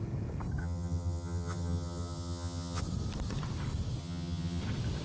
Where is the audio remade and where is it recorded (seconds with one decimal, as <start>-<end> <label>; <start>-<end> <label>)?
0.0-0.6 recorded; 0.6-2.8 remade; 2.8-4.0 recorded; 4.0-4.6 remade; 4.6-5.0 recorded